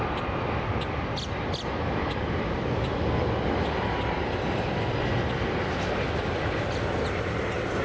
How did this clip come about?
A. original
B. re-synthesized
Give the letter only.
A